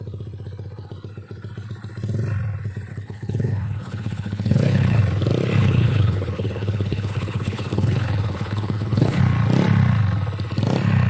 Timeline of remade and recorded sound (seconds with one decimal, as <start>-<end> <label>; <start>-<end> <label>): 0.0-2.9 recorded; 2.9-5.0 remade; 5.0-5.6 recorded; 5.6-9.2 remade; 9.2-11.1 recorded